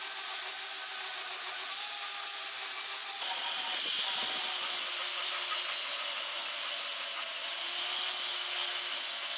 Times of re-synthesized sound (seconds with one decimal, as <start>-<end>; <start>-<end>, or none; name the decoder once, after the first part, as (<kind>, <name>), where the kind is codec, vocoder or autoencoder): 3.0-3.5 (vocoder, Vocos)